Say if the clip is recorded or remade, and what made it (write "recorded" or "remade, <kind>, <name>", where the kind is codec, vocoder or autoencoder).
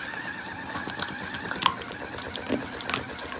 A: recorded